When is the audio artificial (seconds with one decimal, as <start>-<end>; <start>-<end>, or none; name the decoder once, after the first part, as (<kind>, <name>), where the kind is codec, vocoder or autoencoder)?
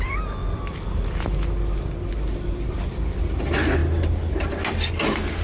none